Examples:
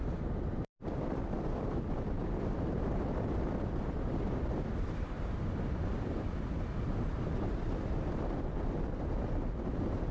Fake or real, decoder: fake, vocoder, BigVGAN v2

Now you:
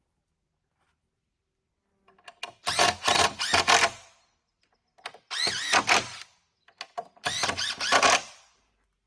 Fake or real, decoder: real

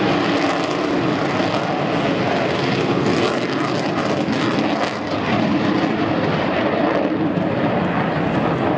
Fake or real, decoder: real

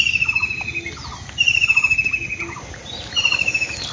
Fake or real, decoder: real